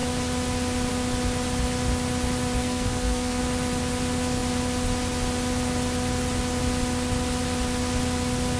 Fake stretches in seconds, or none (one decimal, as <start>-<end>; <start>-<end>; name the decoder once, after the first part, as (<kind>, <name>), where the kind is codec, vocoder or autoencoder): 2.6-3.4 (codec, SNAC)